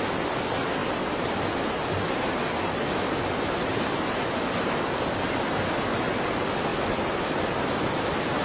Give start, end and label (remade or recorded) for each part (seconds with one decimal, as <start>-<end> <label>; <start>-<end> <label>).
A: 0.0-6.7 recorded; 6.7-7.4 remade; 7.4-8.4 recorded

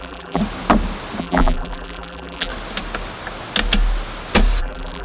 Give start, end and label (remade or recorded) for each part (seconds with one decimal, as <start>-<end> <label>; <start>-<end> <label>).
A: 0.0-0.4 remade; 0.4-1.2 recorded; 1.2-2.5 remade; 2.5-4.6 recorded; 4.6-5.0 remade

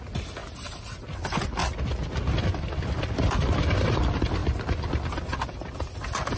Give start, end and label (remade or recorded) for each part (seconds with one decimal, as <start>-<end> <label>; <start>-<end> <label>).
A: 0.0-1.6 recorded; 1.6-3.8 remade; 3.8-4.4 recorded; 4.4-6.4 remade

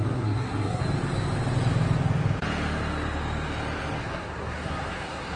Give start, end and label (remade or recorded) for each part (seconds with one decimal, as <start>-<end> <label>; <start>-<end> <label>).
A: 0.0-0.8 remade; 0.8-4.0 recorded; 4.0-5.4 remade